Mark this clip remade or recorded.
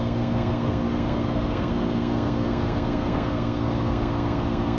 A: remade